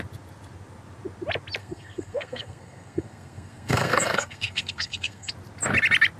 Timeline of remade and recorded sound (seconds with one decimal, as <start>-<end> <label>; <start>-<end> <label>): 0.0-1.6 recorded; 1.6-5.3 remade; 5.3-6.2 recorded